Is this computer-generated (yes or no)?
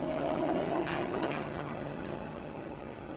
yes